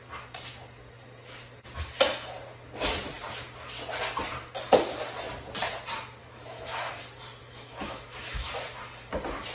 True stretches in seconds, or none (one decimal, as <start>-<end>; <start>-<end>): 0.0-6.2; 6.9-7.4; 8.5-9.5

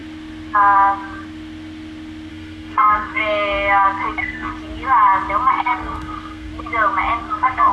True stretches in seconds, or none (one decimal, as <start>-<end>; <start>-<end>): 0.0-2.3; 3.2-4.1; 4.5-5.5; 6.5-7.2

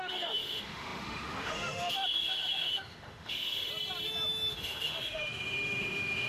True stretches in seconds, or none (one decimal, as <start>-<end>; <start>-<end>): 3.7-4.5

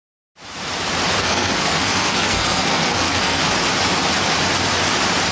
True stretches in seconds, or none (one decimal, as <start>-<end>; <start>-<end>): 0.0-1.2; 3.4-5.3